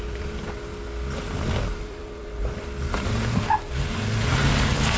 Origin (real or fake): real